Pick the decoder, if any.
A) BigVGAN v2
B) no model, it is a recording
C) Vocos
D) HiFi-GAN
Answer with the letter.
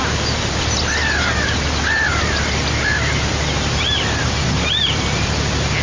A